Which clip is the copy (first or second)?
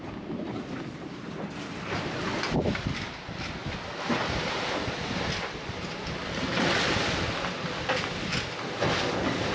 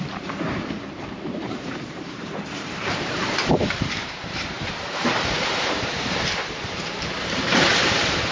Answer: second